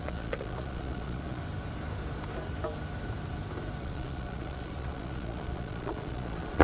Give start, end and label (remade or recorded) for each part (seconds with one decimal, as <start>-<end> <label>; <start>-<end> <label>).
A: 0.0-1.4 remade; 1.4-3.8 recorded; 3.8-6.6 remade